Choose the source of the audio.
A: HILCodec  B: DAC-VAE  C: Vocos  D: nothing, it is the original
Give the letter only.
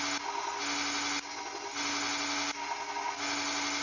D